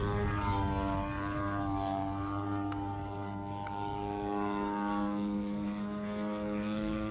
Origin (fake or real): fake